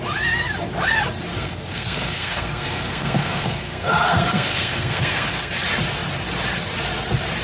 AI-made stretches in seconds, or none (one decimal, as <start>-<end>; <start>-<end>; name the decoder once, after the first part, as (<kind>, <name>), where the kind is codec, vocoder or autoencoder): 1.3-5.5 (codec, SNAC)